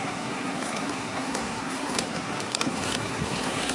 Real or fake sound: fake